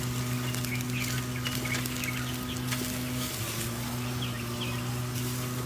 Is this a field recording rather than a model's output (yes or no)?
yes